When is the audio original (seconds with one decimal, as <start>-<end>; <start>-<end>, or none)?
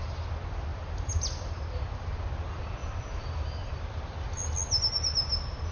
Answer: 0.0-0.7; 2.1-2.8; 3.7-5.7